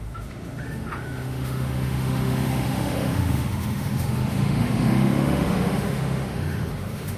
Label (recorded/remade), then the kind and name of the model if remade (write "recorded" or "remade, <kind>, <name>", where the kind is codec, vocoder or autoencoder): remade, autoencoder, DAC-VAE